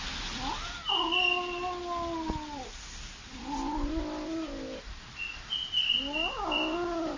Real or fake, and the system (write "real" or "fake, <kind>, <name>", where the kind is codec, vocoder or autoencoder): real